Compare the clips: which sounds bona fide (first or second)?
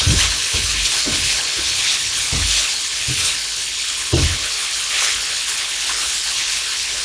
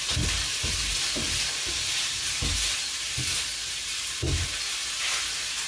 second